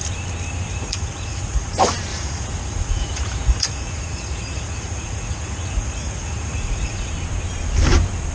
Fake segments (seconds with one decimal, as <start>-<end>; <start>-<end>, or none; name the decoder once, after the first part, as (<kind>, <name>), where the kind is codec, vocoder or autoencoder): 0.7-1.7 (vocoder, Vocos); 2.1-7.1